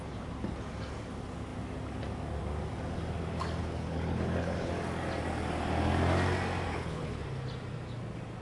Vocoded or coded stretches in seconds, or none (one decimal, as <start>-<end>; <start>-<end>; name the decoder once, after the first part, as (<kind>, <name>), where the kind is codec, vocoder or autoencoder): 3.6-4.7 (codec, HILCodec); 6.7-7.2